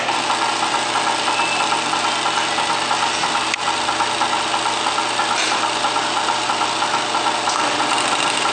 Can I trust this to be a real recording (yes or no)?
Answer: yes